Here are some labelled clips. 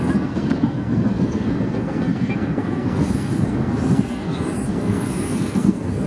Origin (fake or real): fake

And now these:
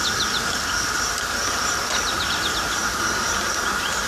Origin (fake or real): real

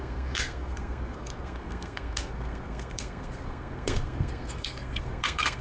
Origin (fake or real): fake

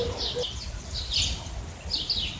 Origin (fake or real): real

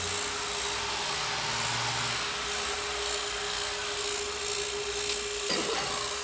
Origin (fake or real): real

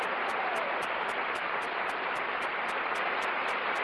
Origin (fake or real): real